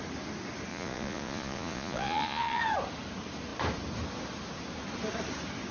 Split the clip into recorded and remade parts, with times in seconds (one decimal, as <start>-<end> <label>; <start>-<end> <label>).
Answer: 0.0-0.7 recorded; 0.7-2.6 remade; 2.6-5.7 recorded